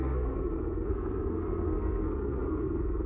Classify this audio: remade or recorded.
remade